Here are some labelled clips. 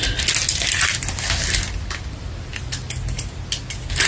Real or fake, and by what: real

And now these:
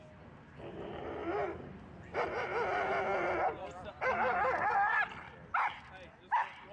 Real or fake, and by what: real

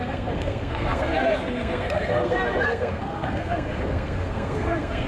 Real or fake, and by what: fake, codec, SNAC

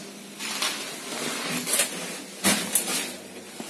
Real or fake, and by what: real